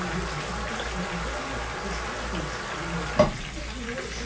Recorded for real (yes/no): yes